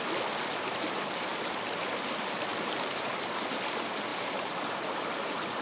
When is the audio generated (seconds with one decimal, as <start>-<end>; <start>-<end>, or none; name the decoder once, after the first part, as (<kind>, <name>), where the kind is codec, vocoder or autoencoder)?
2.5-3.3 (vocoder, BigVGAN v2); 4.1-5.6

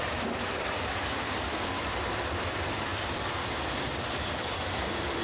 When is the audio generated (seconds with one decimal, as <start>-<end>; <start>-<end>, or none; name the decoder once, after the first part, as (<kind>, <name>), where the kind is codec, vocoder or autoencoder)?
0.0-5.2 (vocoder, BigVGAN v2)